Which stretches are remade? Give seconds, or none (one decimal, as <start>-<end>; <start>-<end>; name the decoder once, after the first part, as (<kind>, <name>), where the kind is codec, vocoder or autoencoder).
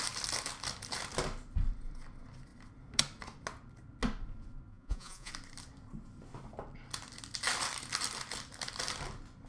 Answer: 4.7-5.3 (vocoder, Vocos)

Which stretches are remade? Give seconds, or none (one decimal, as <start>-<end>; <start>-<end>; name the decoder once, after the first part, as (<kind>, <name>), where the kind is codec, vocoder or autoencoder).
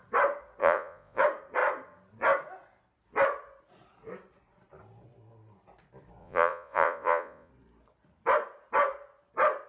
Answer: 0.6-1.2 (vocoder, Vocos); 6.2-7.5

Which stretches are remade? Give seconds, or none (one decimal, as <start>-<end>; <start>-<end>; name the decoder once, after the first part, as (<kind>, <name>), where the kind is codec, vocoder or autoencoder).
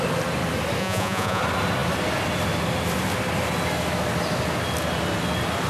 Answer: 0.8-1.4 (vocoder, Vocos)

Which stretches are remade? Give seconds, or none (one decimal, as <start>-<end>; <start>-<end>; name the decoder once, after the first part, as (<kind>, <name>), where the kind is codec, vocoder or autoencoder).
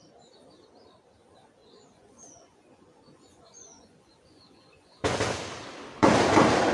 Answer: 1.6-5.2 (vocoder, Vocos)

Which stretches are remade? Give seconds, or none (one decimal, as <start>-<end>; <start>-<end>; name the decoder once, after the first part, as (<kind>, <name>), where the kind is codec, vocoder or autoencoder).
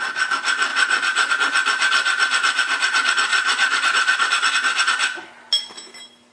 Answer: 0.7-1.3 (vocoder, Vocos); 3.3-4.5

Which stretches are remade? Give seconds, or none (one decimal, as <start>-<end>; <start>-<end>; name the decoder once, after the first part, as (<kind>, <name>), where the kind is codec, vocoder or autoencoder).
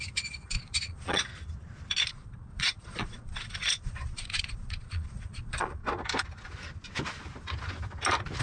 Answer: 0.0-1.3 (vocoder, Vocos); 2.1-5.8